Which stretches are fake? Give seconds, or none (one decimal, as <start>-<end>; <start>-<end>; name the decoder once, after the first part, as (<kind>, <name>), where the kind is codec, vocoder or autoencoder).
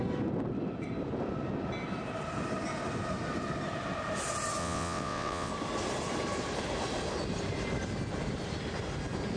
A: 4.6-5.5 (vocoder, WaveNeXt)